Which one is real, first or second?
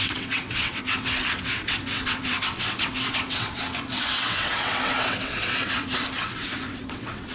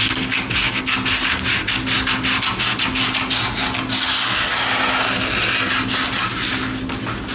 second